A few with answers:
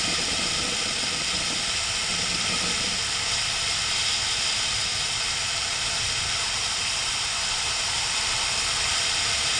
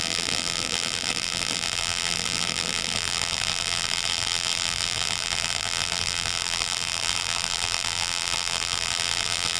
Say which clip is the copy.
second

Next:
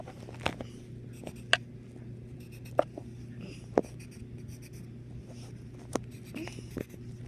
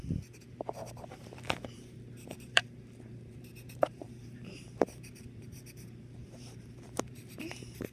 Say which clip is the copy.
second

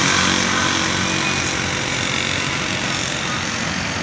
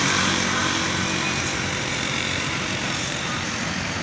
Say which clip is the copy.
second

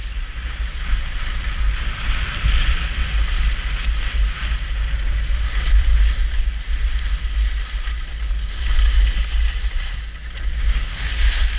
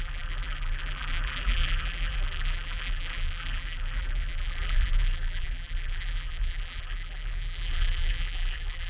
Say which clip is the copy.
second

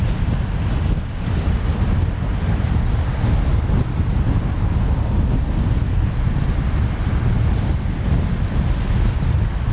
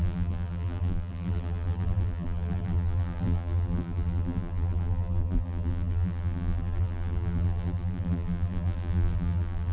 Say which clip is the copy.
second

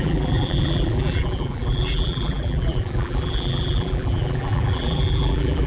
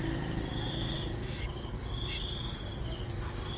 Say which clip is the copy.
first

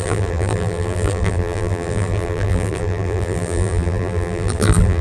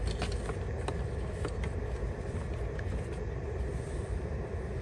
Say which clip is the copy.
first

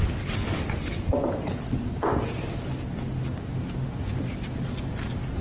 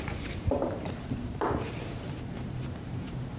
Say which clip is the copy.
second